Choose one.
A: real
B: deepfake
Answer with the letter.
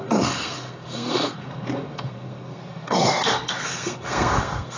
B